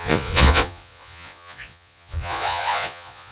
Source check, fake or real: fake